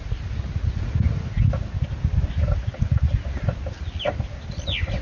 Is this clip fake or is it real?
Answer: real